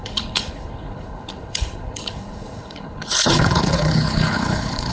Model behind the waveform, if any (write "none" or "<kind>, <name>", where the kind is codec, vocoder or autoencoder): codec, HILCodec